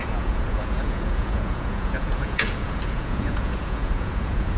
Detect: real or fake fake